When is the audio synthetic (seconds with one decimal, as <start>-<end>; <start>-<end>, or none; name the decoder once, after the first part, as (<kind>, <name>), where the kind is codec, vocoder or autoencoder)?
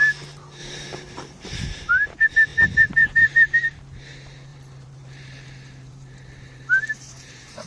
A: 0.6-1.9 (vocoder, BigVGAN v2); 2.5-3.8; 4.5-7.7